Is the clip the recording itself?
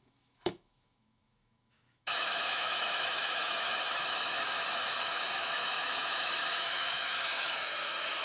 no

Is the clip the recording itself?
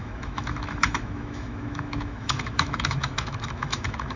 no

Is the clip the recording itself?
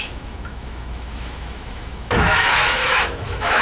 no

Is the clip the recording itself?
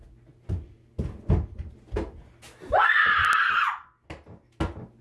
yes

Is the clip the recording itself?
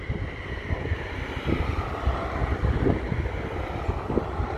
yes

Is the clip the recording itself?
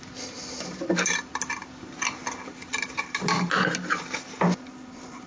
yes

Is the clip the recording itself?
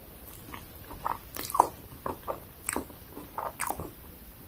yes